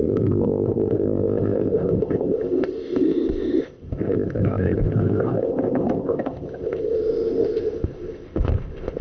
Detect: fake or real fake